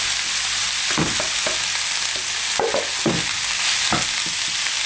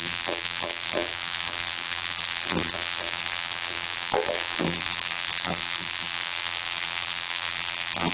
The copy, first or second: second